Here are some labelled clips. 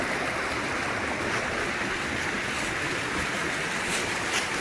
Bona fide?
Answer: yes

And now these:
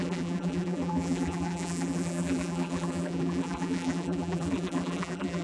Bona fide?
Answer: no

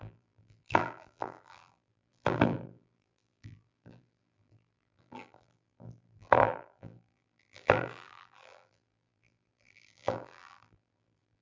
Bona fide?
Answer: no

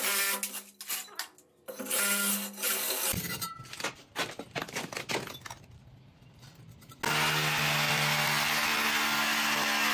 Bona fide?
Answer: yes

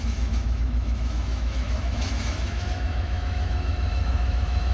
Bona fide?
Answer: no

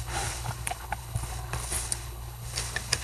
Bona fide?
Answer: no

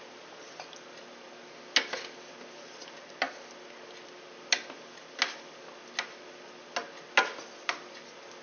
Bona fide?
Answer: yes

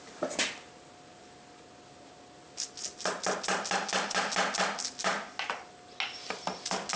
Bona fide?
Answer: yes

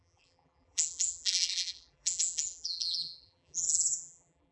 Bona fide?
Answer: no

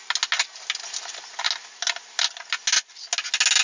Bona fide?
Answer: yes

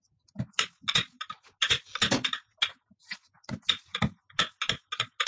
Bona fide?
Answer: yes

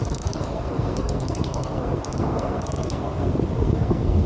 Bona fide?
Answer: no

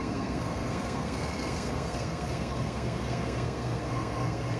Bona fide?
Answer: no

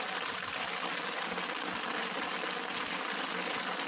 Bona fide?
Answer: yes